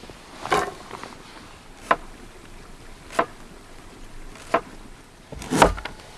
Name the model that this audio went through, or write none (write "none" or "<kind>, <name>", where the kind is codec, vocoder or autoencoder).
none